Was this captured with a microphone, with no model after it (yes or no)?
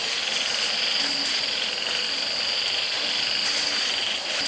yes